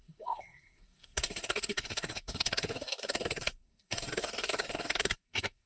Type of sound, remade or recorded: remade